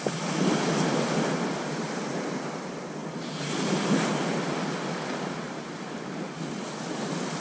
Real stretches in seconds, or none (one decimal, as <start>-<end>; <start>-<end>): 0.0-7.4